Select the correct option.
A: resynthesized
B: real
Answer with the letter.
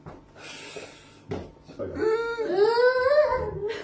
B